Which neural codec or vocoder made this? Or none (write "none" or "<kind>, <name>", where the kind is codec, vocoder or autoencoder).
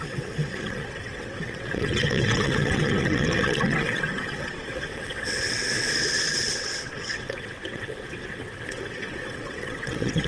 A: vocoder, WaveNeXt